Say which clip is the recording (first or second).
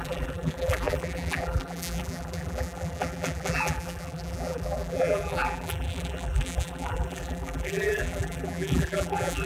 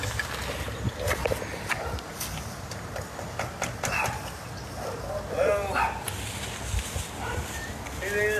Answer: second